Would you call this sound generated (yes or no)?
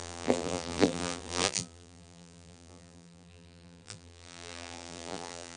yes